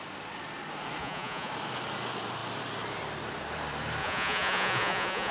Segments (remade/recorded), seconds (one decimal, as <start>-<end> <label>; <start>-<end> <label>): 0.0-1.0 recorded; 1.0-1.5 remade; 1.5-4.0 recorded; 4.0-5.3 remade

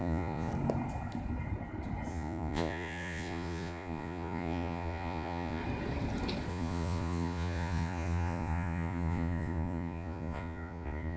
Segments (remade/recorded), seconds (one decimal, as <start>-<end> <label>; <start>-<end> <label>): 0.0-0.5 remade; 0.5-2.1 recorded; 2.1-5.6 remade; 5.6-6.5 recorded; 6.5-11.2 remade

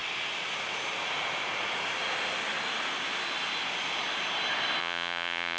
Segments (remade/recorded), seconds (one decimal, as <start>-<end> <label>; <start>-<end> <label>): 0.0-4.8 recorded; 4.8-5.6 remade

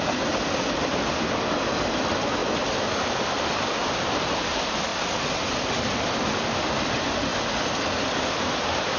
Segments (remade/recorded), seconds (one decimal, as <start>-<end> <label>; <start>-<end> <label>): 0.0-9.0 recorded